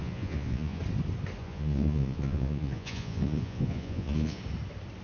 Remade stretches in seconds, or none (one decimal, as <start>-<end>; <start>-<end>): 0.0-0.8; 1.4-4.4